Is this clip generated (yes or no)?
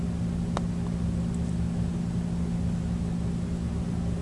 no